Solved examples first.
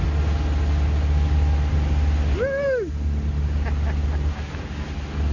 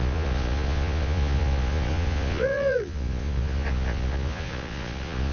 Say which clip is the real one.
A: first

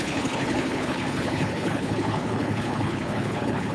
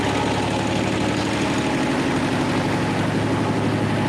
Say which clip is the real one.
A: second